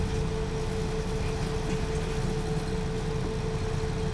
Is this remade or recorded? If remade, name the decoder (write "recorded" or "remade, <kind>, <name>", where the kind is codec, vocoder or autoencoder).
recorded